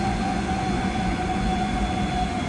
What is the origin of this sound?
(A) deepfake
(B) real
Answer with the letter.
A